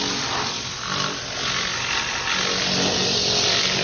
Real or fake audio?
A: real